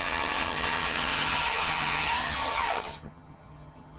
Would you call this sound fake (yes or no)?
yes